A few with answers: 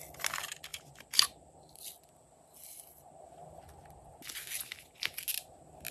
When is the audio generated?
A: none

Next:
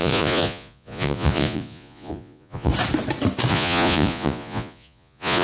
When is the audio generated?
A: 0.0-2.7 (vocoder, Vocos); 3.5-5.4

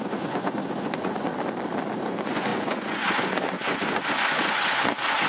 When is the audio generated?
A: 0.0-1.3 (vocoder, Vocos); 2.0-5.3

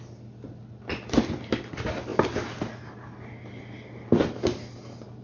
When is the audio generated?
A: none